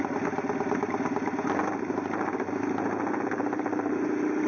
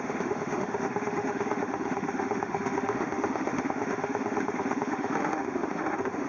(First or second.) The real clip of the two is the first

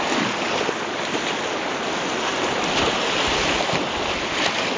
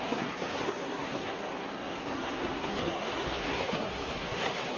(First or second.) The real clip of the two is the first